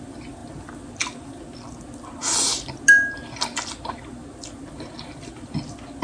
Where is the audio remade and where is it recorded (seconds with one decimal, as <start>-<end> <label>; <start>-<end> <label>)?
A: 0.0-6.0 recorded